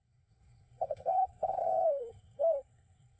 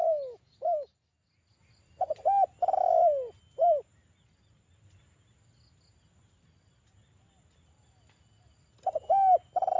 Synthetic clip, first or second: first